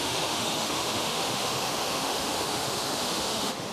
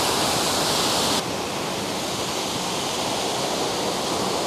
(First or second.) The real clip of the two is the second